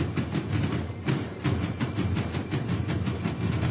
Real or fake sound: real